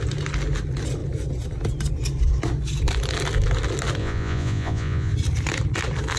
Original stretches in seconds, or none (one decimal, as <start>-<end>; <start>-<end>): 0.0-4.0; 5.1-6.2